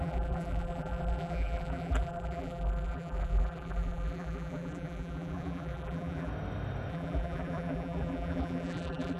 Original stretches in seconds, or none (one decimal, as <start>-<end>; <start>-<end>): 6.3-6.9